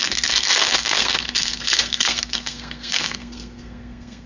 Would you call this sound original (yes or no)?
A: no